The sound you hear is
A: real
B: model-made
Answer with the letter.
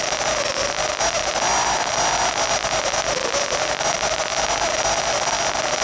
A